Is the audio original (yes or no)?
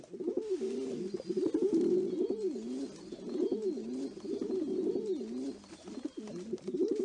yes